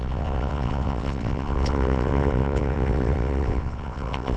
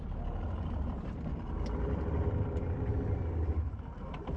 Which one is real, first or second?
second